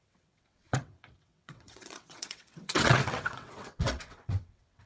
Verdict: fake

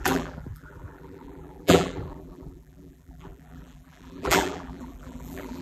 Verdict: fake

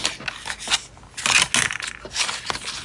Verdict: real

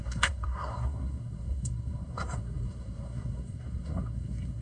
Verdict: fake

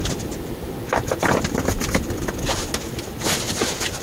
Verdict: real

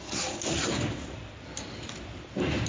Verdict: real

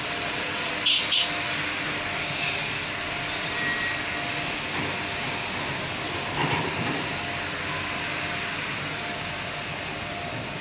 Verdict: real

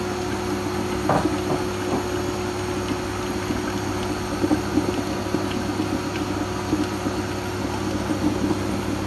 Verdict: real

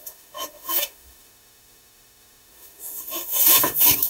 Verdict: fake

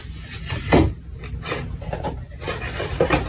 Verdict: real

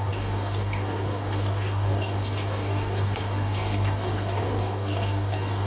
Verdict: fake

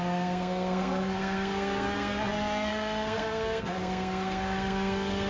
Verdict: fake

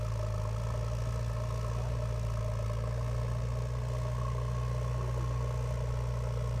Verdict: real